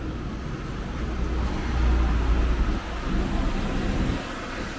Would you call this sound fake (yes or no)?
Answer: no